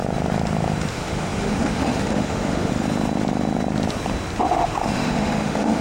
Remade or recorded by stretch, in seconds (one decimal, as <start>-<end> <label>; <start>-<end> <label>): 0.0-0.9 recorded; 0.9-2.7 remade; 2.7-4.5 recorded; 4.5-5.8 remade